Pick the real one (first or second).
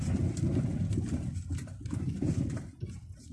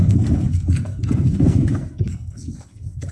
first